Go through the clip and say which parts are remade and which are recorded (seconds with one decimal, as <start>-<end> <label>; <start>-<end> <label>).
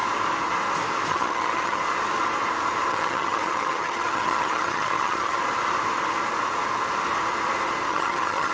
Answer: 0.0-1.1 recorded; 1.1-1.8 remade; 1.8-2.9 recorded; 2.9-5.4 remade; 5.4-7.9 recorded; 7.9-8.5 remade